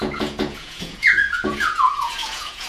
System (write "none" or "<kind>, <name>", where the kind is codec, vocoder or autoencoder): vocoder, Vocos